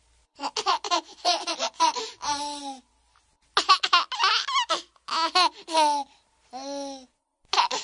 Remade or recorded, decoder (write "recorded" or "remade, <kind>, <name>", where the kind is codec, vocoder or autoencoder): recorded